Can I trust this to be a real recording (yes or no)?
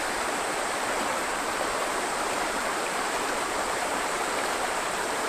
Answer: no